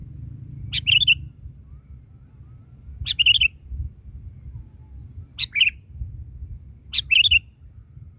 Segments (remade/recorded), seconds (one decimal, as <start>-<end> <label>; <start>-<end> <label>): 0.0-8.2 recorded